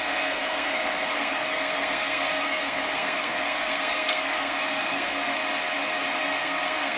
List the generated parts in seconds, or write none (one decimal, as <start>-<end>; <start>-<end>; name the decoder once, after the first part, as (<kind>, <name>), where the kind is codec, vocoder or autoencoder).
0.0-5.4 (codec, SNAC); 6.2-7.0